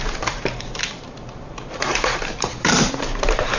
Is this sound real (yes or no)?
no